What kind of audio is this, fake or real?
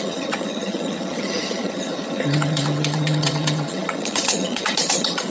fake